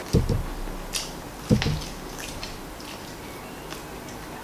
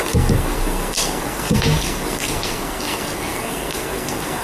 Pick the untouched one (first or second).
first